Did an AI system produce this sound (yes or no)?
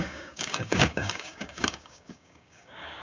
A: yes